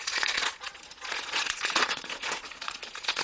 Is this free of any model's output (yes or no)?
no